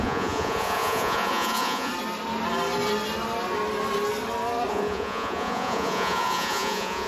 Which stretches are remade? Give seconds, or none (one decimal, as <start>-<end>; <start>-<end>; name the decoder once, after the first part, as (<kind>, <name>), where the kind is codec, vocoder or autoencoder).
0.0-1.9 (vocoder, Vocos); 4.7-7.1